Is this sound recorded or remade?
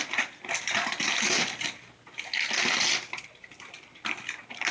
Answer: recorded